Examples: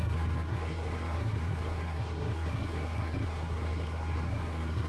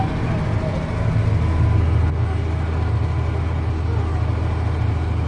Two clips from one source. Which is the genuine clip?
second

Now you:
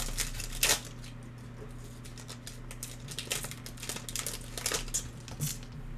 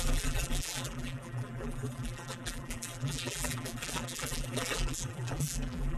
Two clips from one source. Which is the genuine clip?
first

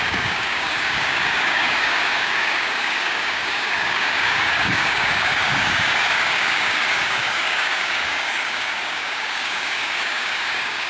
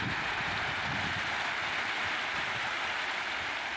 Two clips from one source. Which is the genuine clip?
second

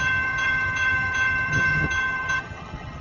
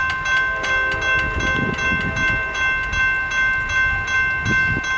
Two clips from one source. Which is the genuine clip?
second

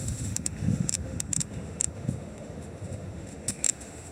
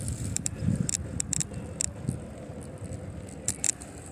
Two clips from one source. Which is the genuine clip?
second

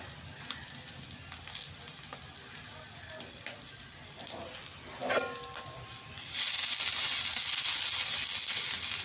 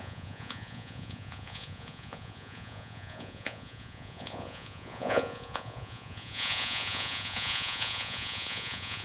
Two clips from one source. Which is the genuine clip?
first